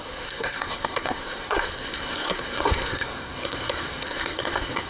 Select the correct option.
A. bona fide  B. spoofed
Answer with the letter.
B